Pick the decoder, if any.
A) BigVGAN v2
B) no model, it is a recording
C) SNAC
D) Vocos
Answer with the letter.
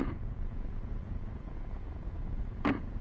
D